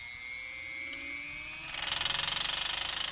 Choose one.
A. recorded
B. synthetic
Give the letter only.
A